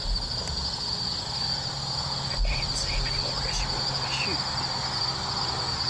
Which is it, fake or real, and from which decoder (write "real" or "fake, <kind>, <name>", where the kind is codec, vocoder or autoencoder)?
real